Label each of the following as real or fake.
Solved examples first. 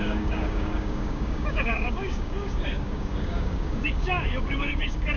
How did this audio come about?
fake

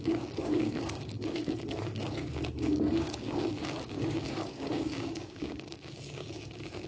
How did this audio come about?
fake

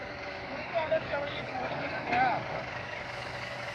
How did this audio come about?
fake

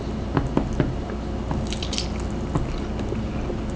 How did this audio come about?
real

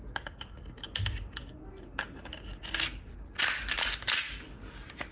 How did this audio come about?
real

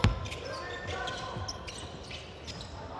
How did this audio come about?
real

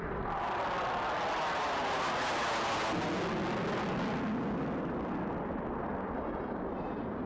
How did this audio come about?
real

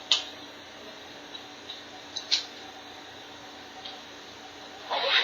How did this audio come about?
real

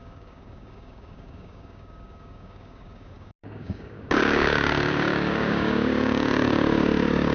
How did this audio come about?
fake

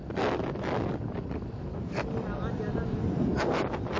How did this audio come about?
real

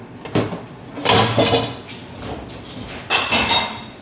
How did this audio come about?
real